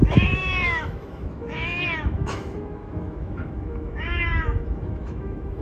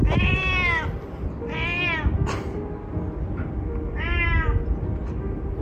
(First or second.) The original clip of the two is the second